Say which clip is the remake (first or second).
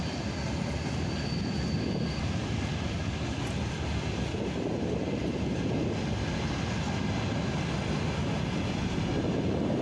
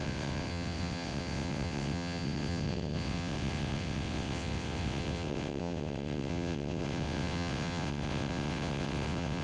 second